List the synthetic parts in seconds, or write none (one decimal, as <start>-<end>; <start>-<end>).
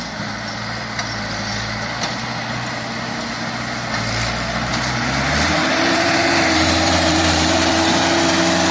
4.7-7.7